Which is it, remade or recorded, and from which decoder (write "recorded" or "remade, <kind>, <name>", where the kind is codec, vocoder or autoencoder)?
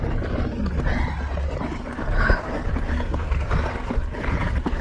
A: recorded